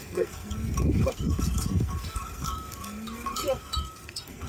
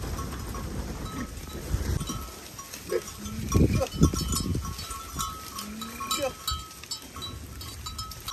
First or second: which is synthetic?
first